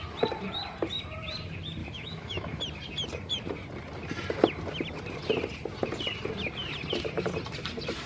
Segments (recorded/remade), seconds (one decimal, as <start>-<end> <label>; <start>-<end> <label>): 0.0-1.8 recorded; 1.8-2.6 remade; 2.6-8.1 recorded